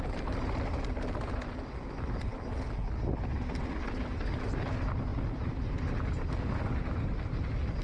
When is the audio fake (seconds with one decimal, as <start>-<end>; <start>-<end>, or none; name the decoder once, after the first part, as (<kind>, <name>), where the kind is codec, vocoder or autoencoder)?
none